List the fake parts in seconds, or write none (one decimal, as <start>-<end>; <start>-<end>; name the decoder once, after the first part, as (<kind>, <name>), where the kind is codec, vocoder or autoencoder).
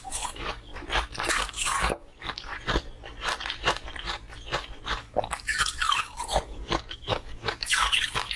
0.0-0.7 (codec, DAC); 1.3-2.5; 5.0-8.4